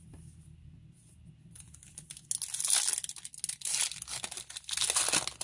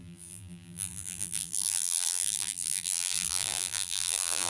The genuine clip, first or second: first